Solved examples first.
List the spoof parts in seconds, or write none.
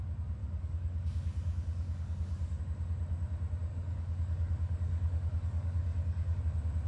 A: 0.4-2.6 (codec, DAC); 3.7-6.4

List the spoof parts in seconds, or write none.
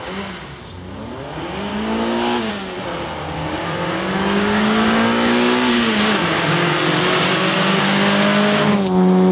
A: 1.7-2.5 (codec, DAC); 3.2-7.8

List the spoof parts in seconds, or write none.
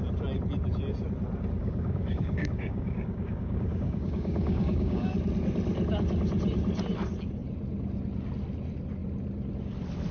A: 1.6-5.1 (codec, DAC)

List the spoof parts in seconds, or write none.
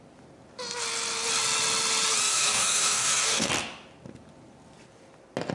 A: 2.3-3.5 (codec, DAC)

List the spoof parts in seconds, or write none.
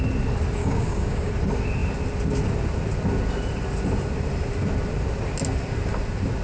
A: 0.6-1.3 (codec, DAC)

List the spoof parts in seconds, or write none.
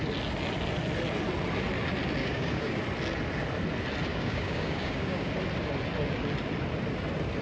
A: 2.2-2.8 (codec, DAC); 4.1-5.3